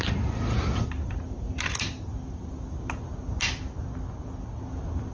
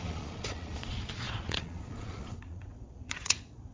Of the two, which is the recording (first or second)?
first